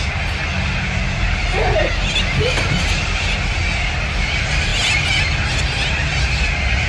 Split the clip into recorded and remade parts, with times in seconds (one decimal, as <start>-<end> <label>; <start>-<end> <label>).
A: 0.0-6.9 recorded